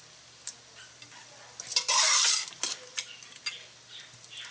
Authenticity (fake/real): real